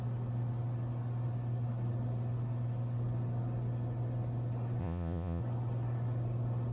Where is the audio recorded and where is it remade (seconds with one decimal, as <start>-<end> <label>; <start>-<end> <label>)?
0.0-4.8 recorded; 4.8-5.4 remade; 5.4-6.7 recorded